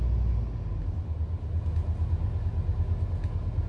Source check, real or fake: real